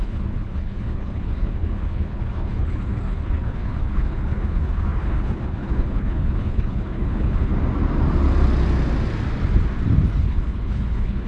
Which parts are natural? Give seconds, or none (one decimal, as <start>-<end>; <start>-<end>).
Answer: 7.5-10.2